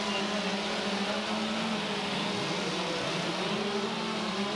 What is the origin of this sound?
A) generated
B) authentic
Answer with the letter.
B